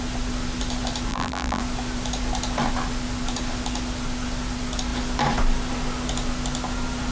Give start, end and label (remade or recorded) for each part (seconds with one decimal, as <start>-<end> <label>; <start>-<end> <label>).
0.0-1.1 recorded; 1.1-1.6 remade; 1.6-7.1 recorded